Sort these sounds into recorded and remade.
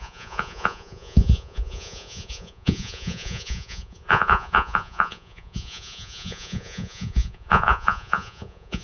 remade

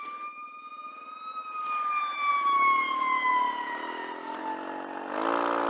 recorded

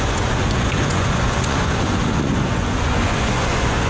remade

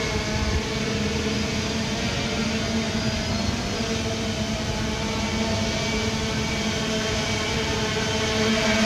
recorded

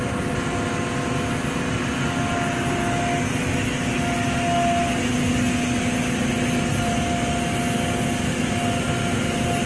recorded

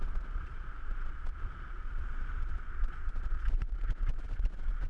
remade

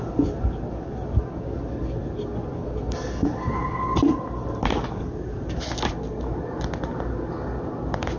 recorded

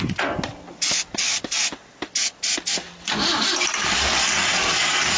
recorded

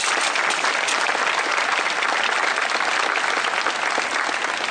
recorded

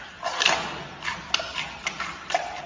recorded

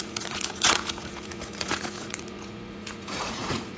remade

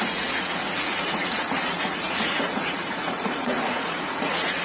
remade